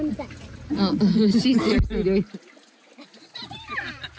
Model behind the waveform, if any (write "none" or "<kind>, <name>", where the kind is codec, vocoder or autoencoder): none